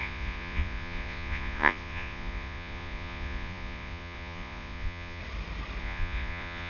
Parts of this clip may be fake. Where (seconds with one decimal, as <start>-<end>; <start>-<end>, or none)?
0.0-5.2; 5.8-6.7